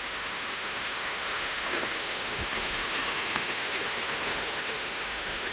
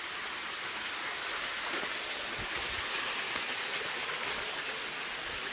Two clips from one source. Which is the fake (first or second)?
first